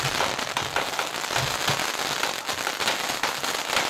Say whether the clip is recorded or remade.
recorded